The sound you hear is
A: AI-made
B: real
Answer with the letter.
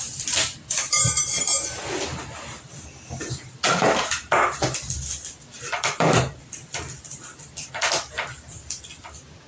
A